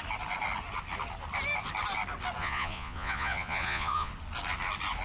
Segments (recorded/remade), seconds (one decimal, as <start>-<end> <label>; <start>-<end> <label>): 0.0-2.4 recorded; 2.4-4.1 remade; 4.1-5.0 recorded